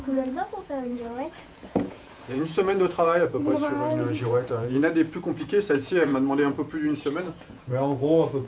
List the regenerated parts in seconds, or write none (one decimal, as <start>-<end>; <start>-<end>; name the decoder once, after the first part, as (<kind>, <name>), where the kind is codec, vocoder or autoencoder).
0.0-4.8 (vocoder, Vocos); 5.4-6.1; 7.2-8.5